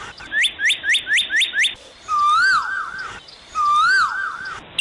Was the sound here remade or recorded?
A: recorded